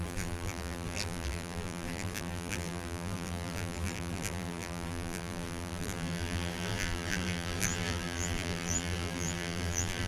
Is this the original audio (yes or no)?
no